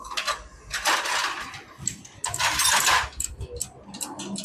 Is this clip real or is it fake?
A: real